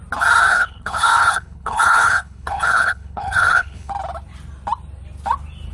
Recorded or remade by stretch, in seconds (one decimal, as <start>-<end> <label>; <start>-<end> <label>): 0.0-0.5 recorded; 0.5-3.9 remade; 3.9-5.7 recorded